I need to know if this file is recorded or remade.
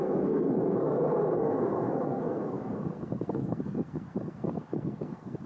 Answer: remade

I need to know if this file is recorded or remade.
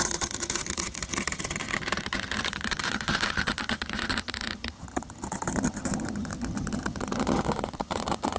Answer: remade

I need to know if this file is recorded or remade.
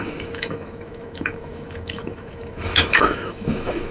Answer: remade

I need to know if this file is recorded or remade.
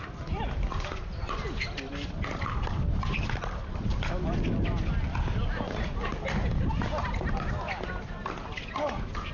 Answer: recorded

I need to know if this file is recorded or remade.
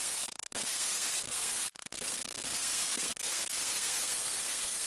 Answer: remade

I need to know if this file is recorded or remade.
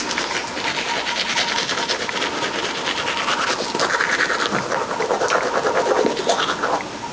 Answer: recorded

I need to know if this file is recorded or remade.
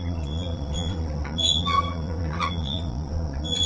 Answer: remade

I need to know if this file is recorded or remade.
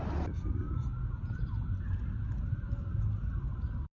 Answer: recorded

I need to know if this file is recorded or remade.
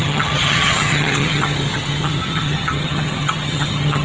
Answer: remade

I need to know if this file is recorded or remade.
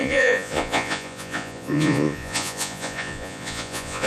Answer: remade